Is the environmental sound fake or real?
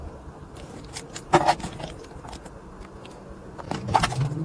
real